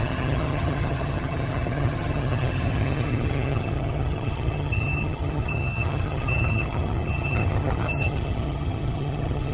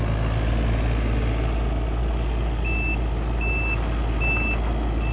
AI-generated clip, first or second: first